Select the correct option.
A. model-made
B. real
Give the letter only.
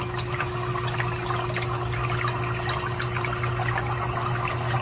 B